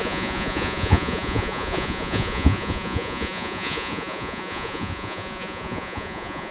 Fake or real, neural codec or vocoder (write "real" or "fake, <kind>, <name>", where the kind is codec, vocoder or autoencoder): fake, vocoder, Vocos